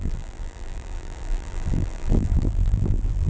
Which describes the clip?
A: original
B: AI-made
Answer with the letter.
B